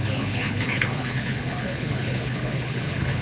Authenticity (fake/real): fake